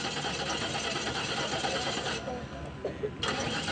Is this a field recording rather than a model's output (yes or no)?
yes